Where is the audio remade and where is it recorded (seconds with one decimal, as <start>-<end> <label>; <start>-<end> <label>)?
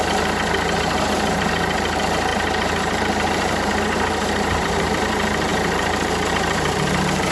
0.0-7.3 remade